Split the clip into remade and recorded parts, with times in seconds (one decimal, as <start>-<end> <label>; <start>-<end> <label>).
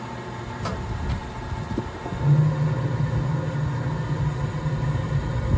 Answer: 0.0-5.6 recorded